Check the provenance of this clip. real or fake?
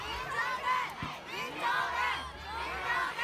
real